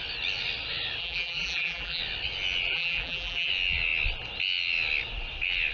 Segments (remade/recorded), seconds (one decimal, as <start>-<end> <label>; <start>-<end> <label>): 0.0-1.0 recorded; 1.0-2.0 remade; 2.0-2.7 recorded; 2.7-3.5 remade; 3.5-5.7 recorded